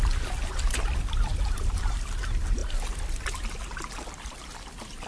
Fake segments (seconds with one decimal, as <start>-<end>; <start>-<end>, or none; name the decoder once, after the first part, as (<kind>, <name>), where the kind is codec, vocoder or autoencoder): none